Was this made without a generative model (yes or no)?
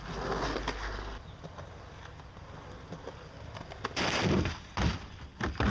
yes